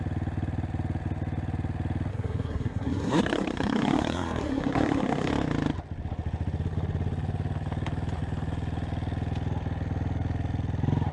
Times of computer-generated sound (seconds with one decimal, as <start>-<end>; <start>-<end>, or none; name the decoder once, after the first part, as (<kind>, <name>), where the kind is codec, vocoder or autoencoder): 2.1-5.3 (codec, SNAC)